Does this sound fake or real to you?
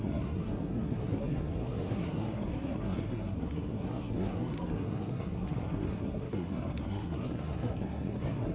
fake